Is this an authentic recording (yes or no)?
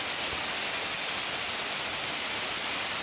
yes